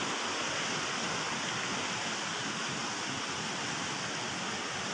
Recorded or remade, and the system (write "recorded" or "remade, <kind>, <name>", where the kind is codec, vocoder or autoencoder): recorded